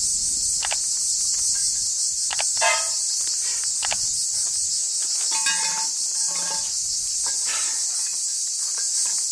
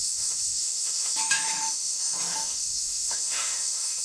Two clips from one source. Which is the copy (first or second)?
second